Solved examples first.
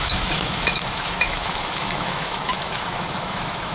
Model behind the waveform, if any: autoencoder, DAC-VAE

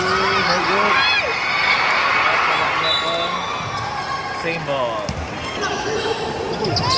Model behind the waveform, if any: none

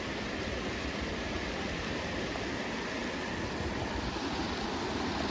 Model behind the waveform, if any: none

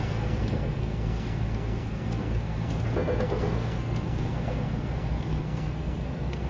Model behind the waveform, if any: codec, SNAC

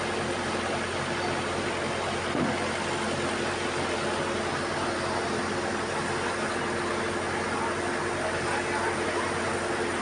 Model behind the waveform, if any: none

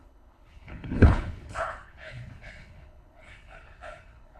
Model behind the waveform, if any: codec, HILCodec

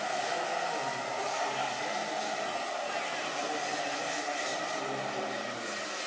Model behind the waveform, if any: none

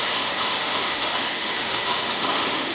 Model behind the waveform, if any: autoencoder, DAC-VAE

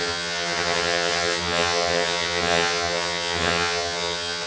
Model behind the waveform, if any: vocoder, HiFi-GAN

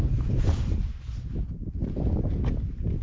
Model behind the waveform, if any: none